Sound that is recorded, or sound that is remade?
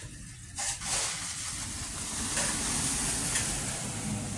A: recorded